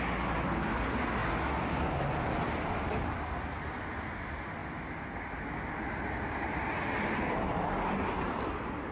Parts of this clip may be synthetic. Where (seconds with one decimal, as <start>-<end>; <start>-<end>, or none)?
none